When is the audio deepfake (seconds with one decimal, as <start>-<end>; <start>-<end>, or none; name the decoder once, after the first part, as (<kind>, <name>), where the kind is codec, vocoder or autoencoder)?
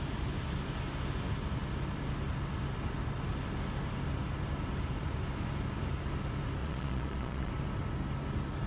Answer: 6.6-7.5 (vocoder, Vocos)